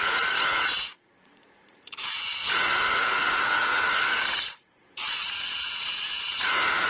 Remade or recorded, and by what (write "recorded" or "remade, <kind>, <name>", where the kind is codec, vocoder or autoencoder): remade, vocoder, Vocos